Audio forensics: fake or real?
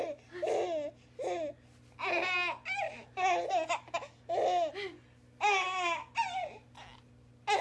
real